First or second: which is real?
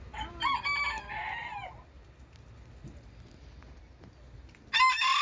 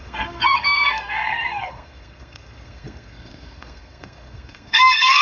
first